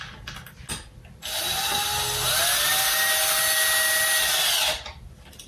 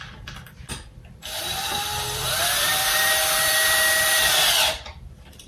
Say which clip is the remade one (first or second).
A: second